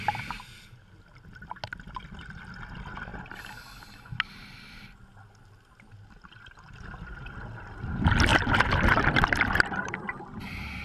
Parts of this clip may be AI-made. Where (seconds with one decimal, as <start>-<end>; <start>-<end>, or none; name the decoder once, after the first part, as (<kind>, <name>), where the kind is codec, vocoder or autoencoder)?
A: none

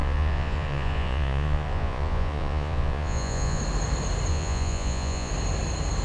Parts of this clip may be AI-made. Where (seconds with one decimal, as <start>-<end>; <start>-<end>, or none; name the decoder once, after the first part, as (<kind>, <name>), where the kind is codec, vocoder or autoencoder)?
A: 0.0-3.6 (vocoder, Vocos); 4.3-5.3

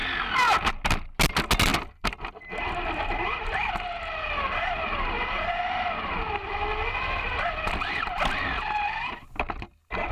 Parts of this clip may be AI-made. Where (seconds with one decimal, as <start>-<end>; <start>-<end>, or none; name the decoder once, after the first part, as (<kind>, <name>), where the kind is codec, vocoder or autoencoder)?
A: none